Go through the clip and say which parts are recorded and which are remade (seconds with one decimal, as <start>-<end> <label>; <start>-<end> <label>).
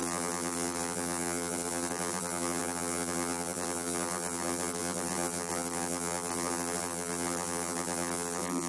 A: 0.0-8.7 remade